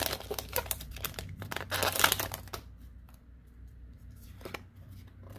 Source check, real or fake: fake